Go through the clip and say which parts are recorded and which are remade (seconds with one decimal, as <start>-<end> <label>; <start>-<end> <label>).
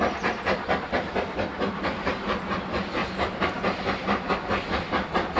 0.0-3.0 recorded; 3.0-4.3 remade; 4.3-5.4 recorded